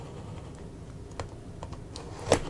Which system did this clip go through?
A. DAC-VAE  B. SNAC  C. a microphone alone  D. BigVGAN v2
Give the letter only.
C